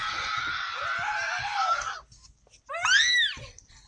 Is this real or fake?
real